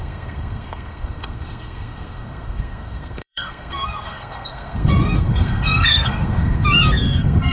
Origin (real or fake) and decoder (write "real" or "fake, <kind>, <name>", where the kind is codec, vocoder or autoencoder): fake, codec, SNAC